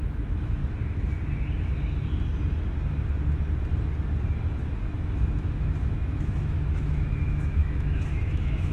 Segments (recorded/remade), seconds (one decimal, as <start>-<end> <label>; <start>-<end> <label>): 0.0-0.6 remade; 0.6-4.8 recorded; 4.8-8.7 remade